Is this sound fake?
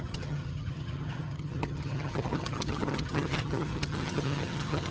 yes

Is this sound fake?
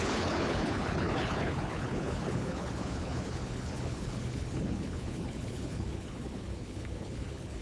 yes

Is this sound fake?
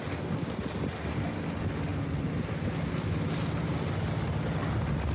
no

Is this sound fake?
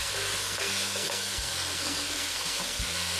yes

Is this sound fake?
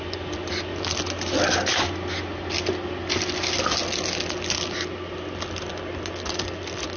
no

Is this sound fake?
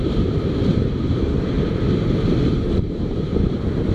yes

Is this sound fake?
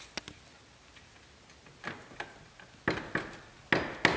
no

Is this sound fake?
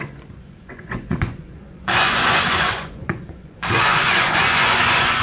yes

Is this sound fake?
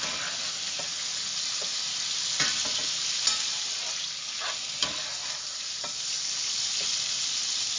no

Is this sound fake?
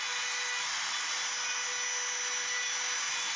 no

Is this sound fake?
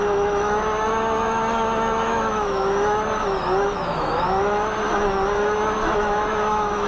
yes